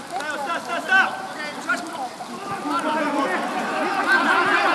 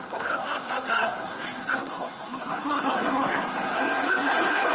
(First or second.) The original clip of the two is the first